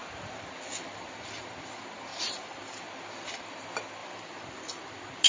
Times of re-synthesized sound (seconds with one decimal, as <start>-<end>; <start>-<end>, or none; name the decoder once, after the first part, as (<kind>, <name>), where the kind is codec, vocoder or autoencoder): 2.1-2.8 (vocoder, BigVGAN v2); 4.0-4.8